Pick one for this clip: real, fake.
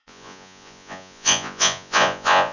fake